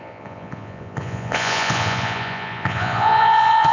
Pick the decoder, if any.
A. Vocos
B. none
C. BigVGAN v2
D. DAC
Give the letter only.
A